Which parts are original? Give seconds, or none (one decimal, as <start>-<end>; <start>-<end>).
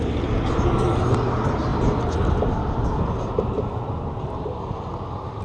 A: 0.0-5.4